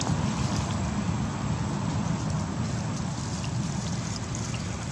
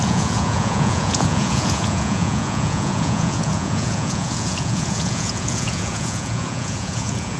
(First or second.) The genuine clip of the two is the first